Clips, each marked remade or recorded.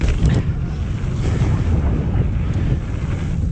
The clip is recorded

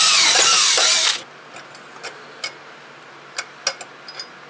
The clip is recorded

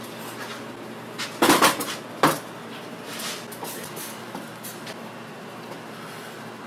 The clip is recorded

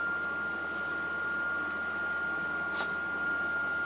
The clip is recorded